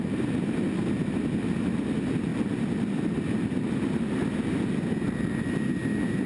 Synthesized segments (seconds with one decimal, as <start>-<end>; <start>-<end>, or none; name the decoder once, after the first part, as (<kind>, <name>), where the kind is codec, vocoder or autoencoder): none